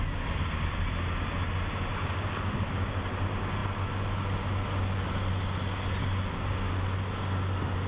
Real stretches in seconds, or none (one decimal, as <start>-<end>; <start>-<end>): 0.0-1.9; 3.1-6.0; 6.7-7.9